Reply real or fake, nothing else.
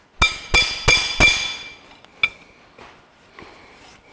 real